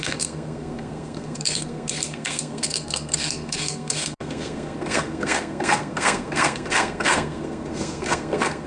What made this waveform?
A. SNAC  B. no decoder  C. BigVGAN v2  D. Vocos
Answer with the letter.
A